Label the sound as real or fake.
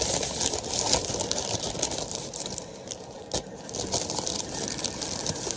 real